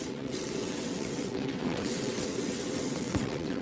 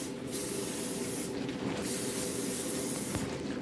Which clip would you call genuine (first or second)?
second